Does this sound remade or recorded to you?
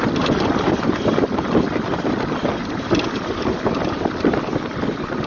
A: remade